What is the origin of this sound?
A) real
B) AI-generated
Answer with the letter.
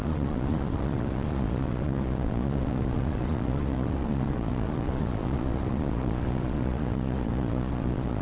B